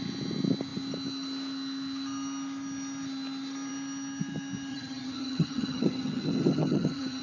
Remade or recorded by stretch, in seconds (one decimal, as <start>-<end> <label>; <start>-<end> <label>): 0.0-4.7 recorded; 4.7-7.2 remade